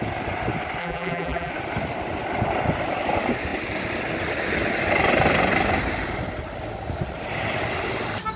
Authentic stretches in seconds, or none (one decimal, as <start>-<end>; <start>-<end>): 0.0-0.8; 1.5-8.4

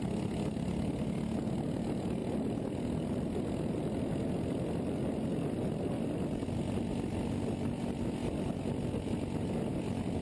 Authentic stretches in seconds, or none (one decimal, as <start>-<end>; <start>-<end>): 0.0-10.2

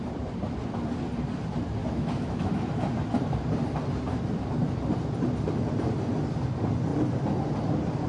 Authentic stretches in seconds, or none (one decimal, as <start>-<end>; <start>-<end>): 0.0-1.8; 2.8-8.1

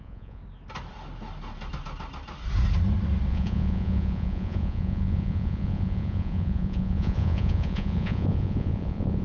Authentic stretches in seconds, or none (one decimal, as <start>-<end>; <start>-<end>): 0.4-3.3

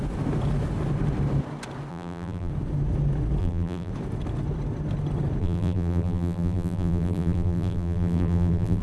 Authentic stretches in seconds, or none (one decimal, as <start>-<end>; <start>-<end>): 0.0-1.9; 2.5-3.4; 3.9-5.4

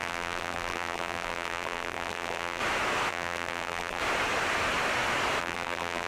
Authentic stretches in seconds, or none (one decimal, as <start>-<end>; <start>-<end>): 2.6-3.1; 4.0-5.4